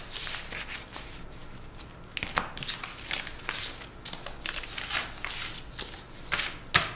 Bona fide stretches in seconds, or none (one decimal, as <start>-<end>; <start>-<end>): 0.0-7.0